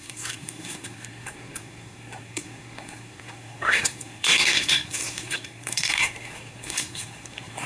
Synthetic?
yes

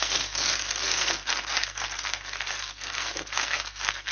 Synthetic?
yes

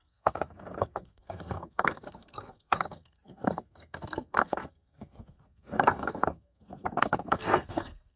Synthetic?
yes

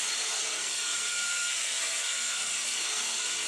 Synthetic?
yes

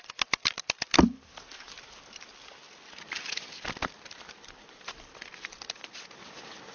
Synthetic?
no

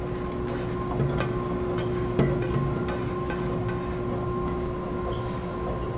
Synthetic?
no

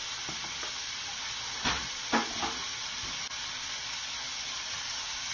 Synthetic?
no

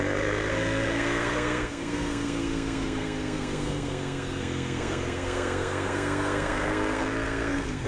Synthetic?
yes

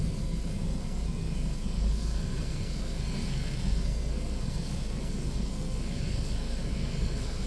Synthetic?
yes